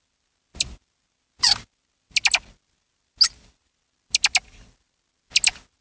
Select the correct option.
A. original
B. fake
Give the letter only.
A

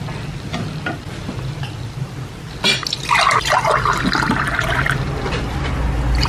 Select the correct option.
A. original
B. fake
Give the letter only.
A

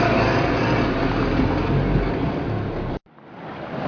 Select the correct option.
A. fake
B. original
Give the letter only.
B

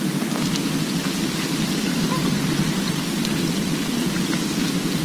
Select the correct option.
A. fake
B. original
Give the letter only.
B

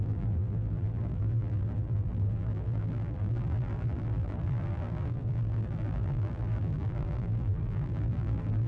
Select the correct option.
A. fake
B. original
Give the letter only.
A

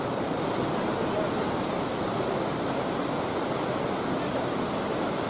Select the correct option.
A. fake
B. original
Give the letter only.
B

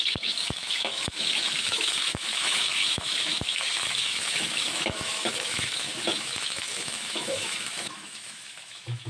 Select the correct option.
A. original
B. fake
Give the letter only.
B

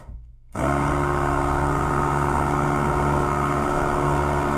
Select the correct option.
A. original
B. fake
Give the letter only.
B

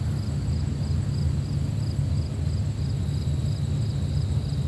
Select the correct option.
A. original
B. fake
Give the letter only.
A